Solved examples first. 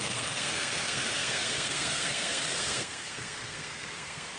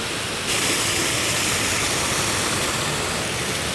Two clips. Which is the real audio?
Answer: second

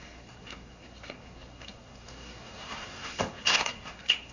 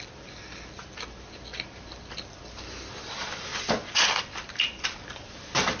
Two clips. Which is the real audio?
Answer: second